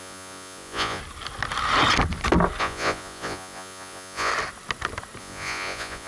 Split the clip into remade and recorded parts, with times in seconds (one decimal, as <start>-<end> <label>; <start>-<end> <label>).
0.0-1.0 remade; 1.0-2.6 recorded; 2.6-4.3 remade; 4.3-5.2 recorded; 5.2-6.1 remade